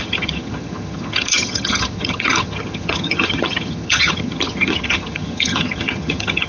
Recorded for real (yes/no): no